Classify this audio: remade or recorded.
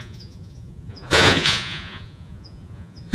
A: remade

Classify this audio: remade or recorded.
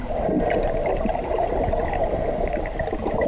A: recorded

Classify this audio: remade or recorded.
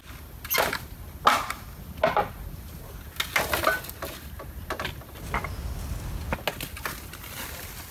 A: recorded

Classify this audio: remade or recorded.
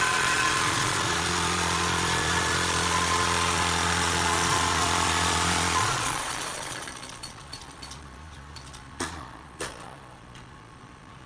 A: remade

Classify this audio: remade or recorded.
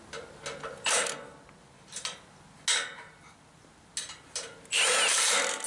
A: recorded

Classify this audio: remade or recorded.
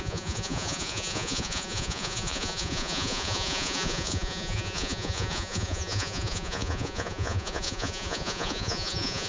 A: remade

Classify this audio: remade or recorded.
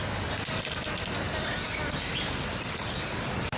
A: recorded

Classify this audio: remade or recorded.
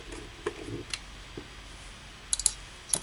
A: recorded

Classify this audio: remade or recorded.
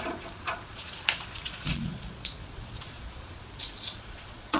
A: remade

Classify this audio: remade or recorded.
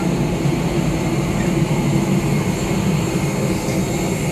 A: recorded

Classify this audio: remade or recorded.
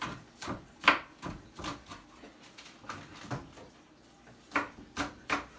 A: recorded